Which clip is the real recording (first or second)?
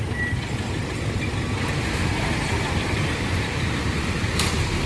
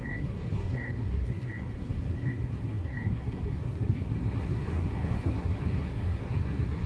first